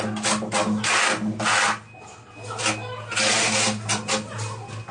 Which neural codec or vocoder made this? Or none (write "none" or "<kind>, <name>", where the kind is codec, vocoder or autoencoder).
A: none